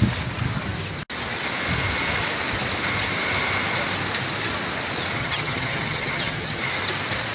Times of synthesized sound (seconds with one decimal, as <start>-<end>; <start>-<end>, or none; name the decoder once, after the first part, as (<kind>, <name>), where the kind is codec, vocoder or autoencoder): 5.2-6.6 (vocoder, HiFi-GAN)